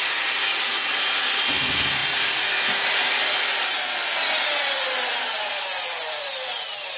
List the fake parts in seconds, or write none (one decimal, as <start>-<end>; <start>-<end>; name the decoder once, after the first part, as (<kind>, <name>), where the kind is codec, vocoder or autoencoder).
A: none